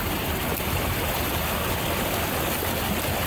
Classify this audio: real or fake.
real